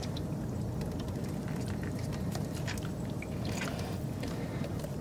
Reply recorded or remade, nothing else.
remade